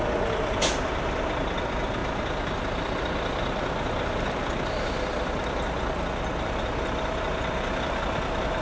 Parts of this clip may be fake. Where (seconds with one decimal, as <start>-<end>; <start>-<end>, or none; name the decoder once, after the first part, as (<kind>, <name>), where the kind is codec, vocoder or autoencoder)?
none